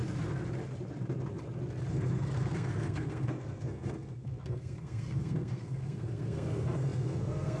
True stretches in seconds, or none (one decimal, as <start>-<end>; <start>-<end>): 0.0-1.9